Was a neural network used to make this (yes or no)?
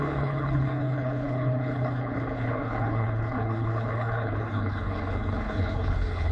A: yes